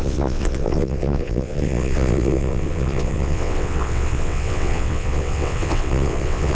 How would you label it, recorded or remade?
remade